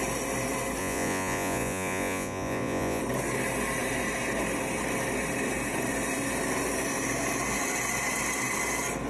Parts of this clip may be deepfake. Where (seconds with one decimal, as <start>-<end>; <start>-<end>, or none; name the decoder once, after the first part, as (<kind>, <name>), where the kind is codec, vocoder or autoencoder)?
0.8-3.0 (vocoder, Vocos)